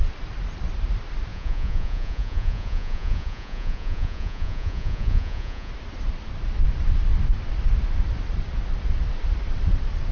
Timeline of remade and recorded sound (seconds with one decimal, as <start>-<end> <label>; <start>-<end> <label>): 0.0-1.3 recorded; 1.3-5.7 remade; 5.7-10.1 recorded